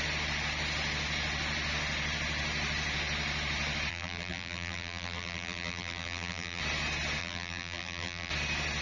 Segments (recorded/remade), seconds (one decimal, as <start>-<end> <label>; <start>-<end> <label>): 0.0-3.9 recorded; 3.9-6.6 remade; 6.6-7.2 recorded; 7.2-8.3 remade; 8.3-8.8 recorded